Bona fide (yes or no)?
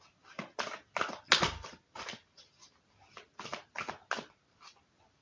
yes